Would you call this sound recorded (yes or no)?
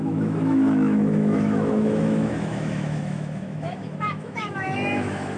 no